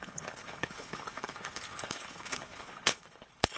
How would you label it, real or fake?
fake